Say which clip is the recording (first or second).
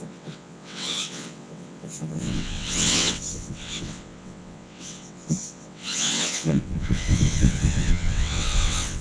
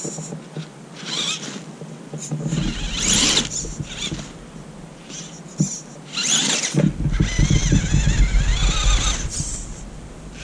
second